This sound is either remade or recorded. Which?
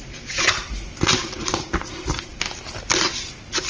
recorded